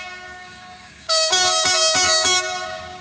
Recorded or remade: remade